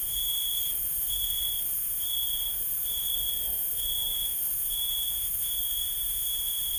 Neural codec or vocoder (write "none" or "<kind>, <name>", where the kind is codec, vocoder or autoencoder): autoencoder, DAC-VAE